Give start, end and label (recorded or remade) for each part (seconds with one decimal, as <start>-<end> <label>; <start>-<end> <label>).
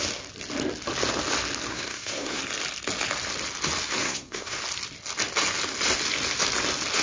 0.0-1.7 recorded; 1.7-2.4 remade; 2.4-4.0 recorded; 4.0-4.6 remade; 4.6-7.0 recorded